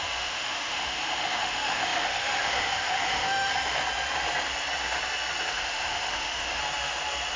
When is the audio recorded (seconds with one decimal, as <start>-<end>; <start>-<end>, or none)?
3.5-5.5; 6.6-7.4